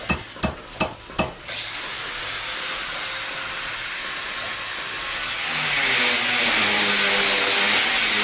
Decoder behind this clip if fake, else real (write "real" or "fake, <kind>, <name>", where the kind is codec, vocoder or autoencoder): real